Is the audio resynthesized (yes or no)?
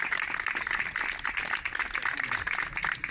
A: no